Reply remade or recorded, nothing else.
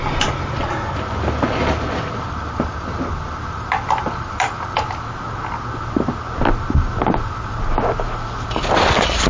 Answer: recorded